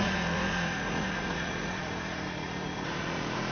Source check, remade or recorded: remade